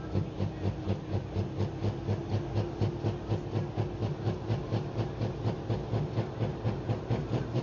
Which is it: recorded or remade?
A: recorded